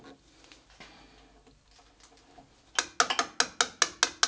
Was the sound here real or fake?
real